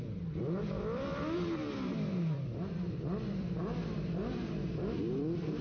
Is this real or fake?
fake